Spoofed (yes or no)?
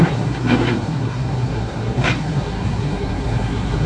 yes